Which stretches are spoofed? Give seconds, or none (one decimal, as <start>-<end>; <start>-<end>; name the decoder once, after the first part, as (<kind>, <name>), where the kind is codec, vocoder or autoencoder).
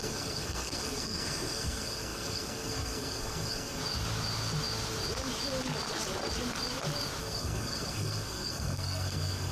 0.0-3.8 (codec, SNAC); 7.2-9.5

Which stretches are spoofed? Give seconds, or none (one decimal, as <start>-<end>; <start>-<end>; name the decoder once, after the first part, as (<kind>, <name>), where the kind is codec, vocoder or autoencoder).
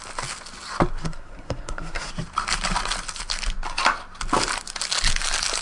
1.0-2.1 (codec, SNAC)